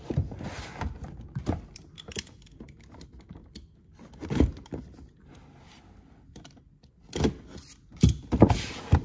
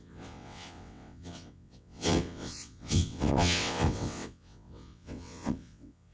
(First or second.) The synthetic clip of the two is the second